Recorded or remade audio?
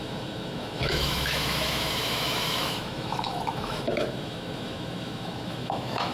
remade